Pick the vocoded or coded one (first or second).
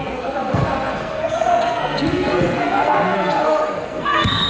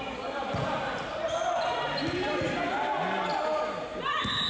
first